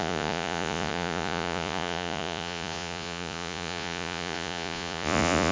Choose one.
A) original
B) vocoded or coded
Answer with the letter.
B